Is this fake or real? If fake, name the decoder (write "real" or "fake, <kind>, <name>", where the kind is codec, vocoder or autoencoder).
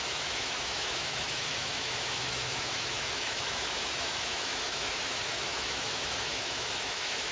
fake, autoencoder, DAC-VAE